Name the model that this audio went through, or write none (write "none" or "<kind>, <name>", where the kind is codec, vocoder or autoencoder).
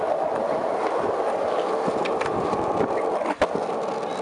none